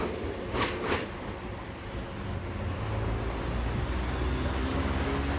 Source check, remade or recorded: recorded